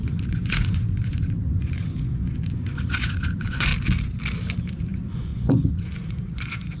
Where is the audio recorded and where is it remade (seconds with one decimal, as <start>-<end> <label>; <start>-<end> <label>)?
0.0-3.7 remade; 3.7-4.6 recorded; 4.6-6.8 remade